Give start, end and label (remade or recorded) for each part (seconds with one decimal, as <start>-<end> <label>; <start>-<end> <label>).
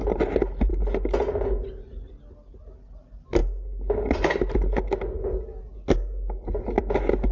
0.0-7.3 recorded